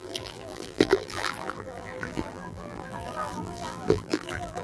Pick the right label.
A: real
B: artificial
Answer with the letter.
B